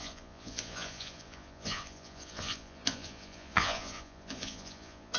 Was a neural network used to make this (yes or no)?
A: yes